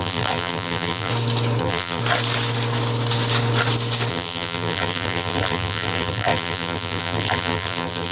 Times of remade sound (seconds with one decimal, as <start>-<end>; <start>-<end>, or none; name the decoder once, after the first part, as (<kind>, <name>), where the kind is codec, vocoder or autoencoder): 0.0-1.1 (vocoder, BigVGAN v2); 1.6-2.0; 4.1-8.1